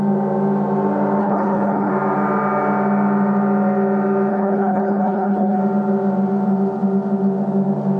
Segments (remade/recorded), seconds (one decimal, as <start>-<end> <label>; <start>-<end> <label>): 0.0-1.2 recorded; 1.2-1.9 remade; 1.9-4.3 recorded; 4.3-5.6 remade; 5.6-8.0 recorded